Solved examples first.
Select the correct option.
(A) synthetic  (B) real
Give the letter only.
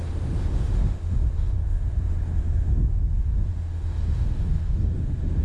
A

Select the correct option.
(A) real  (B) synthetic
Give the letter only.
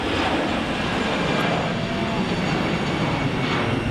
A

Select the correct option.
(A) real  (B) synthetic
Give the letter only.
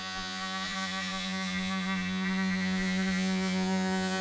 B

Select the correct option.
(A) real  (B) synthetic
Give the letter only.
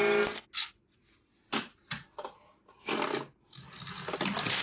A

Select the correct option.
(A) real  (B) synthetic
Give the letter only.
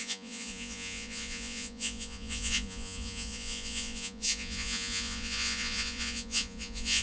B